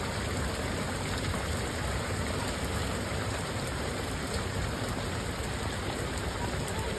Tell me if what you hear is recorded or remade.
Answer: recorded